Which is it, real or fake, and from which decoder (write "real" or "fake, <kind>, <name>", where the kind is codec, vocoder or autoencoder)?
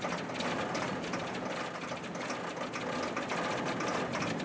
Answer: real